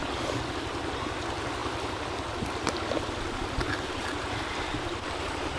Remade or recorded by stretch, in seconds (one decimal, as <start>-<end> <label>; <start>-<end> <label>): 0.0-5.6 recorded